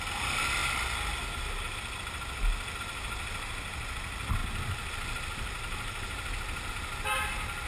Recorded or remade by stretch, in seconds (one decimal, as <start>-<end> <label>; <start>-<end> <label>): 0.0-7.7 recorded